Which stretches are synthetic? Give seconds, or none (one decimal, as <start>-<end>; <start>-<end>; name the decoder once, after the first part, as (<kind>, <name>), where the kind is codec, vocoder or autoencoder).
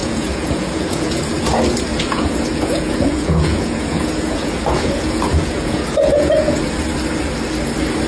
0.0-1.2 (vocoder, Vocos); 1.9-6.6